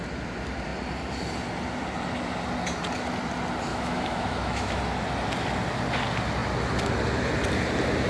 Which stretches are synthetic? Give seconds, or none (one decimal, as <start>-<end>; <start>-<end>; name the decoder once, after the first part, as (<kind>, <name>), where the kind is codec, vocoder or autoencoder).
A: 3.7-4.8 (autoencoder, DAC-VAE)